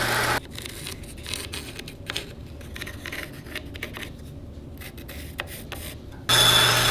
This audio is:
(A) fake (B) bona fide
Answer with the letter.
B